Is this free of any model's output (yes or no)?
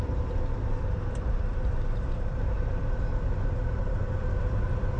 no